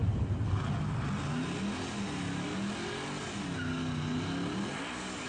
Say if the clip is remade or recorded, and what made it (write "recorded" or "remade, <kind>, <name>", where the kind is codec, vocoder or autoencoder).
recorded